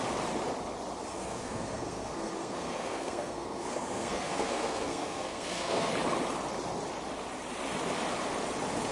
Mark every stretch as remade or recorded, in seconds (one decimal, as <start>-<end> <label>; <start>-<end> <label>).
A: 0.0-1.1 recorded; 1.1-5.9 remade; 5.9-8.9 recorded